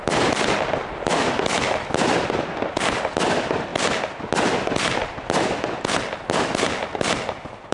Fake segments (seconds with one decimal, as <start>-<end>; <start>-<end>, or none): none